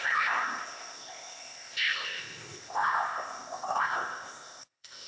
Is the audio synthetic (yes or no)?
yes